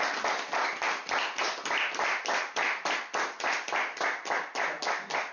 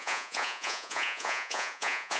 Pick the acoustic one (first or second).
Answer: first